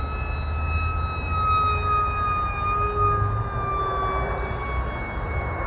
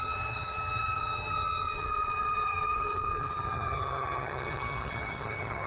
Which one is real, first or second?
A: first